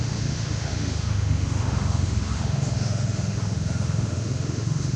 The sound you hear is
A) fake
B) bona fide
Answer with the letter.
A